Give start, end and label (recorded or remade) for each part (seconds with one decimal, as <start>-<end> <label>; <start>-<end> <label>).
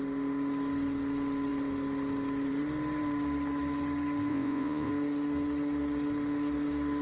0.0-4.3 recorded; 4.3-4.9 remade; 4.9-7.0 recorded